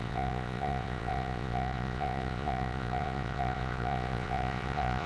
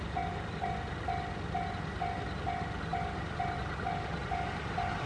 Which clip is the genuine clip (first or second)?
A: second